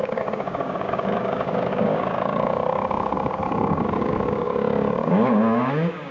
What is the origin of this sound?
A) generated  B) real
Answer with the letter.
A